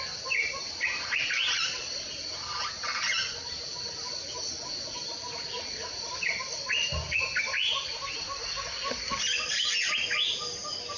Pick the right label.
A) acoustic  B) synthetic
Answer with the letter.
A